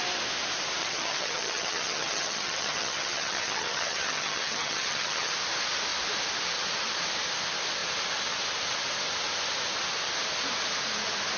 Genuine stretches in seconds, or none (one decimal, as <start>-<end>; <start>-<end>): 0.0-0.8; 5.3-11.4